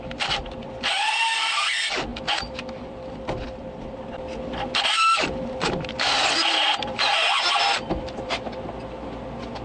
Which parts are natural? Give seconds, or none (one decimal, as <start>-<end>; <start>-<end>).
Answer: 0.0-9.6